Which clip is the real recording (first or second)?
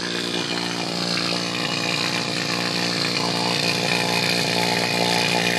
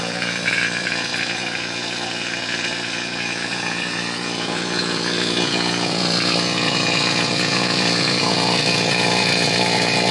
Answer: first